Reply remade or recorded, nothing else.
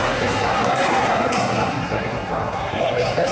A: remade